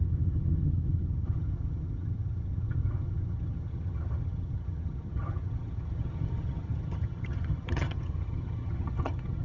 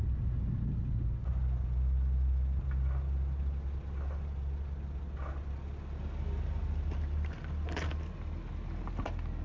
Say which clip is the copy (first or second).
first